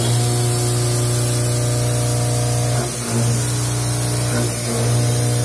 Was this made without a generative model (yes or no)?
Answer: yes